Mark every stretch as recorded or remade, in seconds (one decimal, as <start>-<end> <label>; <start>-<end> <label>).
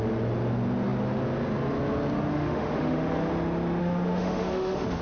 0.0-2.3 recorded; 2.3-3.3 remade; 3.3-3.8 recorded; 3.8-5.0 remade